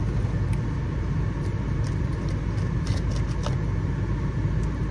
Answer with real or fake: real